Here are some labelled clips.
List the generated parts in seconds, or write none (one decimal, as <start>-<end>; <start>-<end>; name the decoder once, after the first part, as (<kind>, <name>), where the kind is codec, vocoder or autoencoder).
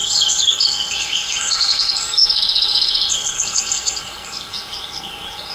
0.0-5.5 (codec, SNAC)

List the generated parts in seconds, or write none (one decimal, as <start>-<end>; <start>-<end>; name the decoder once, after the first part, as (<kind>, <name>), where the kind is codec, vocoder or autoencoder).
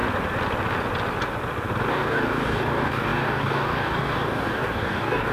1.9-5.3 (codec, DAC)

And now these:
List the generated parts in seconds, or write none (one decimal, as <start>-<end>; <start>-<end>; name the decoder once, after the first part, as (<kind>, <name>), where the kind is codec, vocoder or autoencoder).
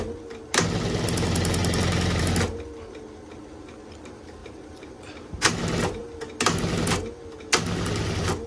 1.6-2.2 (vocoder, BigVGAN v2); 4.4-5.0